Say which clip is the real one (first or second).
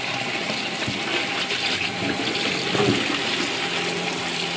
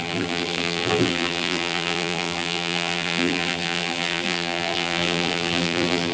first